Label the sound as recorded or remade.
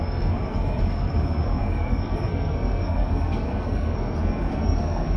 remade